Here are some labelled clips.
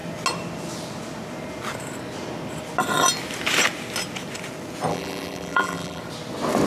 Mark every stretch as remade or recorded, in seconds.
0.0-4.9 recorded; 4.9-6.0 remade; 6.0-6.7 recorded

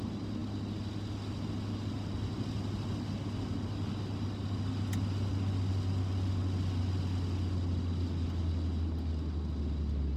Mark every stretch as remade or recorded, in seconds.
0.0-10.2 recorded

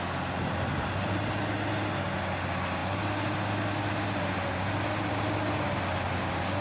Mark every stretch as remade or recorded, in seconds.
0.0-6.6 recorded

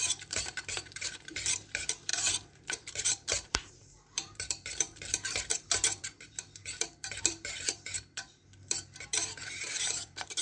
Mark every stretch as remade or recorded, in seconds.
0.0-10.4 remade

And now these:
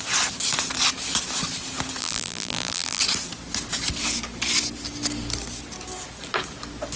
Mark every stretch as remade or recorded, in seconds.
0.0-2.0 recorded; 2.0-3.0 remade; 3.0-7.0 recorded